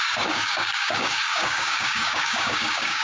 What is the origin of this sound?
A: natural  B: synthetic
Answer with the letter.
B